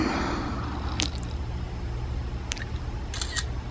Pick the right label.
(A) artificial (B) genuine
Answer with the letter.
B